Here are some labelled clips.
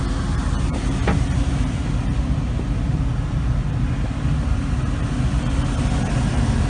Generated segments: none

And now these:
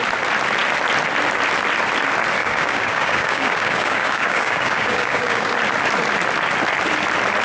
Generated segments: 2.4-5.5 (codec, DAC)